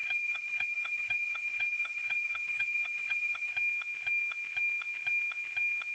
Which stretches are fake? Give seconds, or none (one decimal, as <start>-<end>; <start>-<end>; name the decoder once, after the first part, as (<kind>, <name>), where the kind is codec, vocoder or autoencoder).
0.0-3.5 (vocoder, HiFi-GAN)